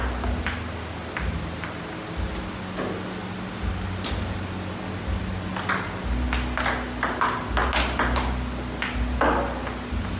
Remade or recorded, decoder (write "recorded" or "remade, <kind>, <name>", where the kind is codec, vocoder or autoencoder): recorded